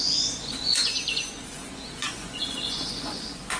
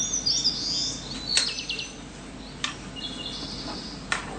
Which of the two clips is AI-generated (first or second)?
first